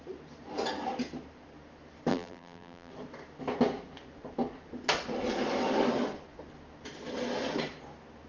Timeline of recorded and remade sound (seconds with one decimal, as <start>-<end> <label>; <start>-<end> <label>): 0.0-2.1 recorded; 2.1-2.9 remade; 2.9-8.3 recorded